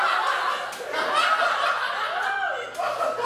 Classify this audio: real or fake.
real